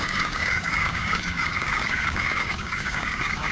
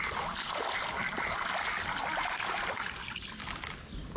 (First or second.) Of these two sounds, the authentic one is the second